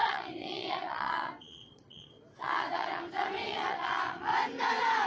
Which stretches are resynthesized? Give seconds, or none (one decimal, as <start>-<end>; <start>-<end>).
0.0-4.3